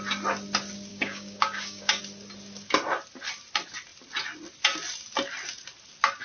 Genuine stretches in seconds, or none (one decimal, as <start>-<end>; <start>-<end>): 0.0-0.9; 2.0-6.2